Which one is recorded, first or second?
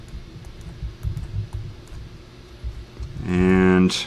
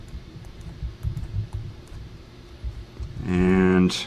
first